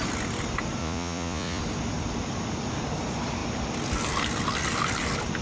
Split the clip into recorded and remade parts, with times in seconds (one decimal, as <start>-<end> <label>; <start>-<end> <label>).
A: 0.0-0.8 recorded; 0.8-1.6 remade; 1.6-5.4 recorded